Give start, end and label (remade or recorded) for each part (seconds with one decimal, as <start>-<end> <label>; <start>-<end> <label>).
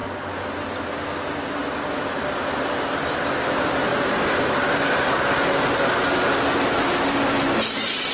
0.0-8.1 recorded